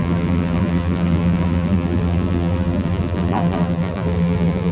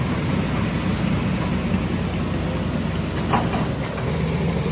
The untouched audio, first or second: second